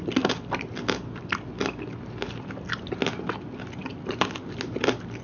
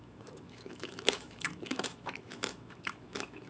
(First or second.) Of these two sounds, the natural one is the first